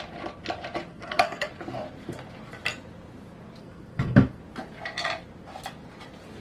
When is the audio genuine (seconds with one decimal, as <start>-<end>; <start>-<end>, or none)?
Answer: 0.0-0.9; 1.5-3.6; 4.4-6.4